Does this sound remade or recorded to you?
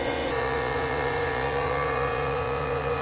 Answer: remade